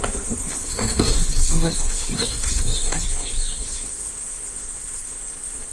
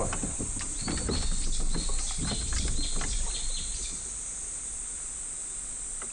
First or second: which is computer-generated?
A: first